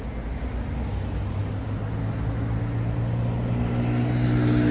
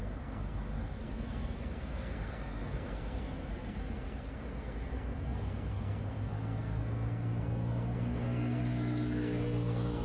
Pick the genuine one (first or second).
first